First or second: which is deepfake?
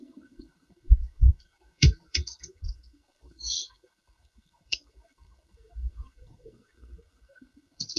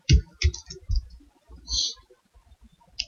first